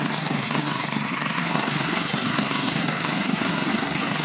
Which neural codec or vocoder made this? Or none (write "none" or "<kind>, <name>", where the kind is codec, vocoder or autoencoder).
codec, SNAC